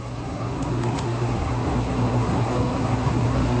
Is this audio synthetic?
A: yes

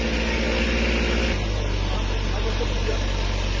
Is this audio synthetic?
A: no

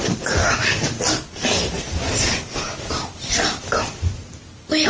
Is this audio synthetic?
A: no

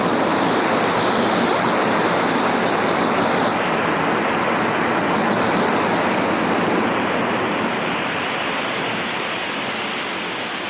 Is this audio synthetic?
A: no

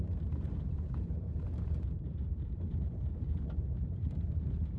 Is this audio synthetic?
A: yes